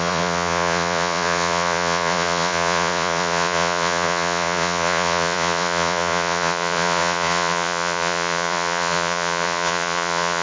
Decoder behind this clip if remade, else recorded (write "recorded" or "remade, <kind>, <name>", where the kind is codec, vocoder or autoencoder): remade, vocoder, Vocos